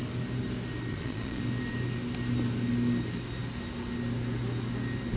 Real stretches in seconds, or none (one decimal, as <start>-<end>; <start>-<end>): 0.0-0.9; 1.4-5.2